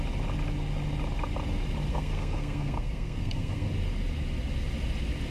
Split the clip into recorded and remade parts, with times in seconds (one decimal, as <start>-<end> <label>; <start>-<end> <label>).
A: 0.0-1.9 recorded; 1.9-3.7 remade; 3.7-5.3 recorded

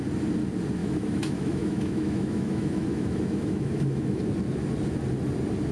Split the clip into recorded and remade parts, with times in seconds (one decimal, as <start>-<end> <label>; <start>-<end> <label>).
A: 0.0-0.8 recorded; 0.8-4.2 remade; 4.2-5.7 recorded

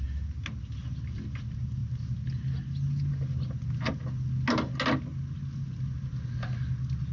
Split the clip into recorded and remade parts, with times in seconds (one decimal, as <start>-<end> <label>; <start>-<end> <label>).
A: 0.0-7.1 recorded